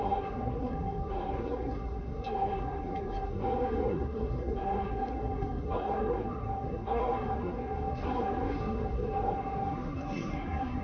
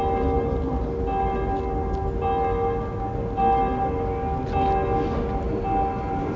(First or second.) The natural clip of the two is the second